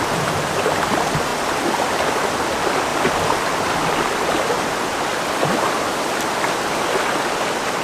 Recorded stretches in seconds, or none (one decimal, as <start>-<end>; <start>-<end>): 0.0-2.9; 6.8-7.8

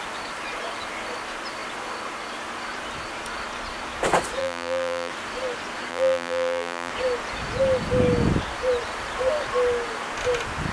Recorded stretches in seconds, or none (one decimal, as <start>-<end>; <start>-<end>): 0.0-4.4; 5.1-5.9; 6.9-10.7

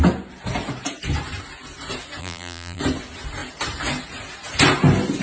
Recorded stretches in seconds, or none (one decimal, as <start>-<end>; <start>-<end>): 0.0-2.2; 2.8-5.2

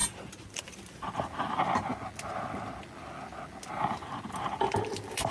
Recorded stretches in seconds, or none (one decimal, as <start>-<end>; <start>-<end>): 0.0-1.2; 1.9-3.7

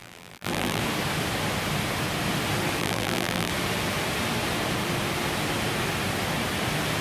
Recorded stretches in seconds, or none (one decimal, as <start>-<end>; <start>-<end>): 0.8-2.8; 3.5-7.0

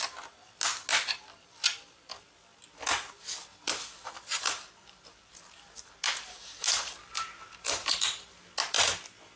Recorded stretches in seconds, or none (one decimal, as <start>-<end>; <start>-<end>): 0.0-3.5; 8.4-9.4